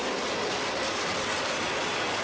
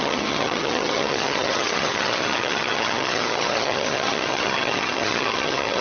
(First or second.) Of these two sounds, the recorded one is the first